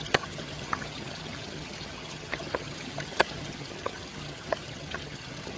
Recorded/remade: remade